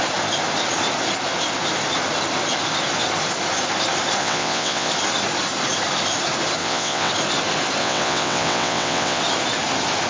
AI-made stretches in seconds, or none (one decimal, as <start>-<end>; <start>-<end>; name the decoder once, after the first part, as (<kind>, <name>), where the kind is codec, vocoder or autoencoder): 4.2-4.9 (vocoder, WaveNeXt); 6.6-7.1; 7.8-9.2